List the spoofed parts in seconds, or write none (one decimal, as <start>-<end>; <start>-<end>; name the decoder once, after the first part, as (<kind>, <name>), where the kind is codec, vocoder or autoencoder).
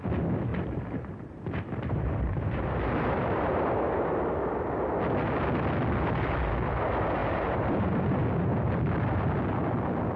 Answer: 0.5-4.1 (vocoder, BigVGAN v2); 7.2-8.0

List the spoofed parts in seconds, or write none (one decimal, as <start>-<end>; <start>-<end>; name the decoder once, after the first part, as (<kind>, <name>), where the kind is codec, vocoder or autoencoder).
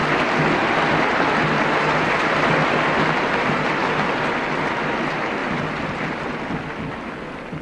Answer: 5.4-6.2 (vocoder, BigVGAN v2)